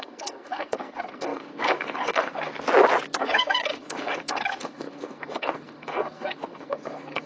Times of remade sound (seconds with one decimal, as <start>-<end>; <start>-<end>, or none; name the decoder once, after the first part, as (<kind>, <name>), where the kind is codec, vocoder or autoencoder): 0.0-2.5 (codec, SNAC); 3.2-7.3